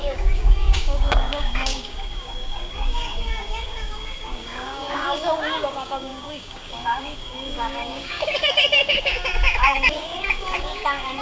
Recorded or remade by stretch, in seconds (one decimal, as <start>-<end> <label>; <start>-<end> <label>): 0.0-11.2 remade